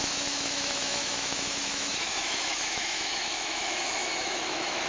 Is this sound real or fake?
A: fake